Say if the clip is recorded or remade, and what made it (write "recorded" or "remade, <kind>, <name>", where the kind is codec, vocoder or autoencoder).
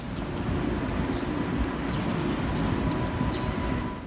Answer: recorded